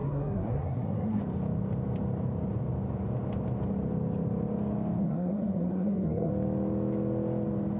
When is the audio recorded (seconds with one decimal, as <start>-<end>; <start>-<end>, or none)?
1.2-5.0; 6.3-7.8

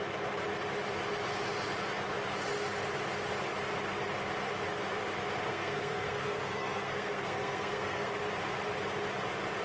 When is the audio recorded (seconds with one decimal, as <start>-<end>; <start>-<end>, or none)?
0.0-5.5; 8.1-9.6

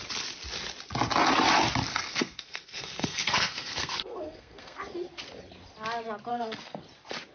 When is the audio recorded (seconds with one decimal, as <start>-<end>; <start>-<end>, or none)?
0.0-1.9; 4.8-6.3; 6.8-7.3

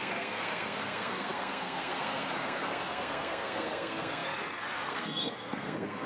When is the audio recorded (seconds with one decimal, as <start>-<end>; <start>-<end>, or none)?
none

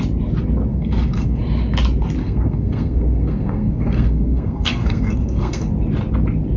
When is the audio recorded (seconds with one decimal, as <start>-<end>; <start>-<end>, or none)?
0.0-0.7; 1.4-2.2; 5.7-6.6

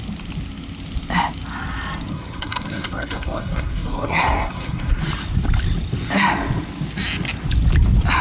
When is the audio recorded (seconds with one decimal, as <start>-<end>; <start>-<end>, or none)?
0.0-2.1; 5.0-8.2

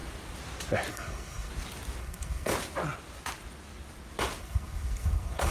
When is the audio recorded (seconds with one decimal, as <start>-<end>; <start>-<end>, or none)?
0.0-0.9; 1.5-2.0; 2.5-4.4

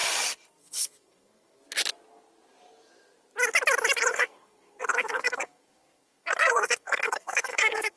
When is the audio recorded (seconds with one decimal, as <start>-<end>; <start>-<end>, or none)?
0.0-0.6; 1.6-4.1